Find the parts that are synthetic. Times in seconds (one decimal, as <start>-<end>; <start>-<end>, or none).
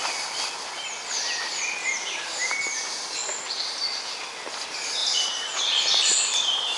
1.8-2.5; 5.0-6.8